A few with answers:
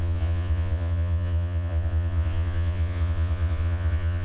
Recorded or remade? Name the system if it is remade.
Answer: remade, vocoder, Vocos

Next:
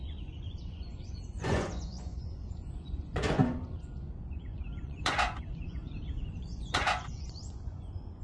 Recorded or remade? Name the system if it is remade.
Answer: remade, vocoder, Vocos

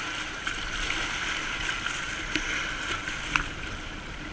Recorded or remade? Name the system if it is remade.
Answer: recorded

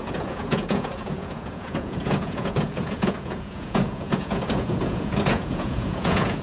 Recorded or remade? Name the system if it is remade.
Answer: remade, vocoder, Vocos